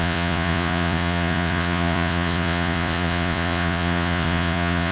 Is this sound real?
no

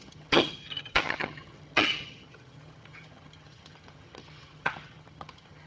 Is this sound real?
no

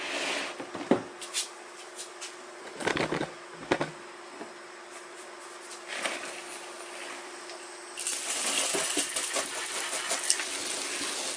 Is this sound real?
yes